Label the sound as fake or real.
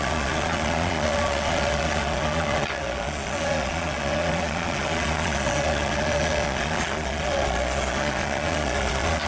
fake